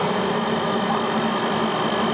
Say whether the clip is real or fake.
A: real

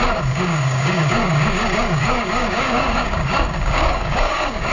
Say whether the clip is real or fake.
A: fake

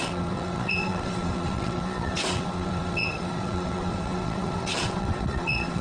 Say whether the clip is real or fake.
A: fake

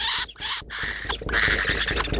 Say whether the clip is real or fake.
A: real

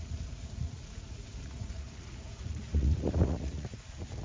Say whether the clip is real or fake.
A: fake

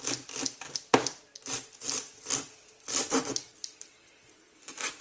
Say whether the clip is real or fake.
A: real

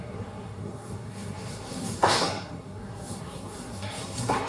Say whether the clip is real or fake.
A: fake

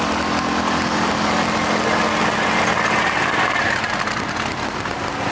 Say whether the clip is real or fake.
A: real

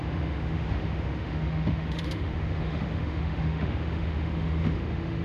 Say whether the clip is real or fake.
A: fake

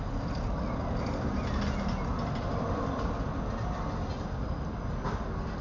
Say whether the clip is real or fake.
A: real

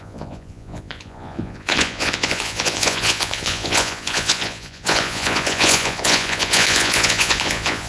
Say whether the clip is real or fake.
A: fake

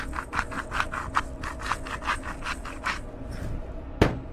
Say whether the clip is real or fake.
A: real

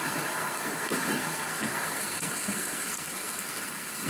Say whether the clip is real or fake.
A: fake